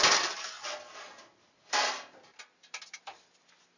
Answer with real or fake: fake